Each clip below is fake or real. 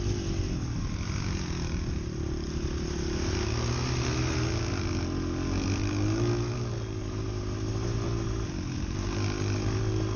real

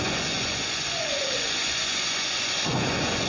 fake